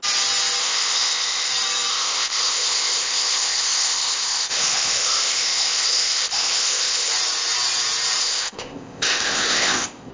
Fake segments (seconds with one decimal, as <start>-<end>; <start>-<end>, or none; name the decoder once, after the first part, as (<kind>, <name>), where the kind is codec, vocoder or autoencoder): 0.6-1.5 (codec, ZipCodec); 1.9-7.1; 8.2-10.1